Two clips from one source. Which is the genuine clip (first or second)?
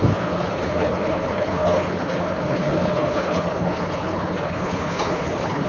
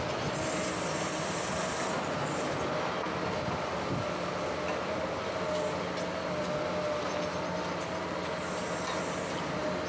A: second